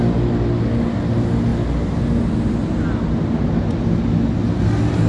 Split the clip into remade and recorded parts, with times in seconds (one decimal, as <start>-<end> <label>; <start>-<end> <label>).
0.0-5.1 recorded